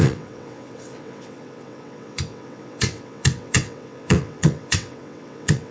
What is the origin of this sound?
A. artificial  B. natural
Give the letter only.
A